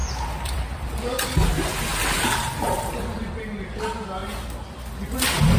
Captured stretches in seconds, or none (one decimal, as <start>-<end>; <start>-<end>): 1.0-1.9; 3.4-5.6